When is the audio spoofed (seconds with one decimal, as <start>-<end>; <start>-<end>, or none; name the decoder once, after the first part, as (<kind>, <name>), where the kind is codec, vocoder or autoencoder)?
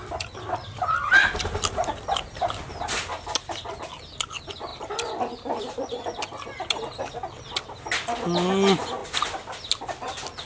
none